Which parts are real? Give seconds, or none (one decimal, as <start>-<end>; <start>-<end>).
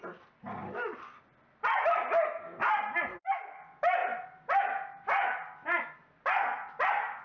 0.0-7.2